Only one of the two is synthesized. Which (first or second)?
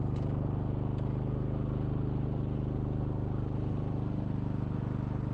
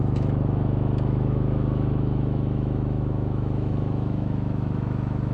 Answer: second